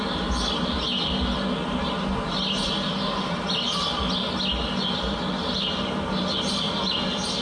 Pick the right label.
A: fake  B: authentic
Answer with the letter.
B